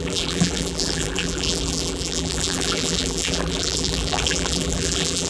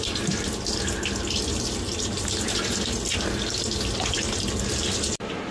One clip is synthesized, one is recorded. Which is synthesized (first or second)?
first